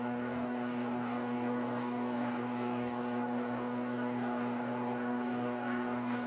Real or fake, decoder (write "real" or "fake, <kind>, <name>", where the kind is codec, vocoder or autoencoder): fake, codec, DAC